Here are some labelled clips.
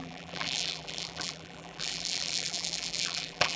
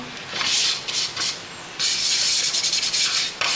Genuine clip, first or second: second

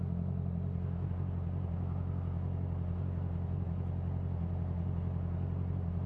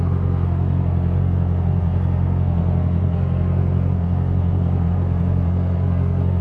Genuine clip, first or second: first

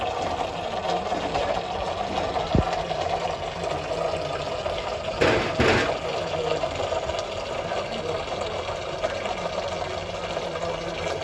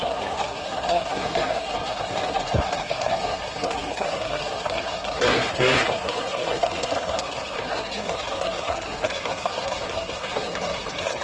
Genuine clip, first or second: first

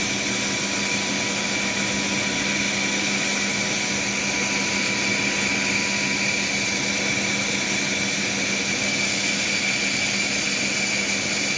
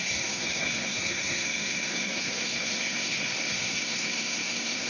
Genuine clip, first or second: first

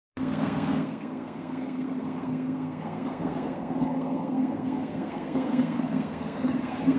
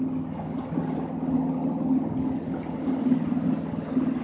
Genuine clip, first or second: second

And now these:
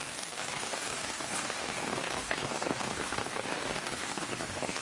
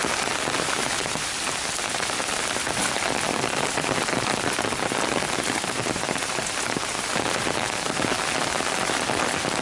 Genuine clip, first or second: second